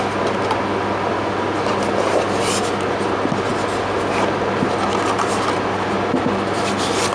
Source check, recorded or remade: recorded